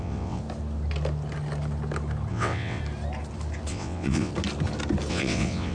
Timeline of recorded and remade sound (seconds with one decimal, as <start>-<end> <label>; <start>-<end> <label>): 0.0-0.4 remade; 0.4-2.3 recorded; 2.3-2.8 remade; 2.8-3.7 recorded; 3.7-4.3 remade; 4.3-5.1 recorded; 5.1-5.7 remade